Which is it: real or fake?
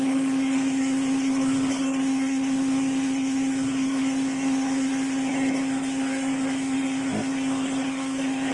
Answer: fake